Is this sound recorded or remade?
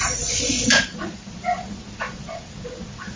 remade